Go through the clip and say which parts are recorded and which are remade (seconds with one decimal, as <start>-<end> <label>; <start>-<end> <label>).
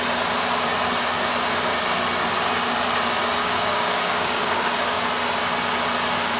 0.0-3.4 recorded; 3.4-5.0 remade; 5.0-6.4 recorded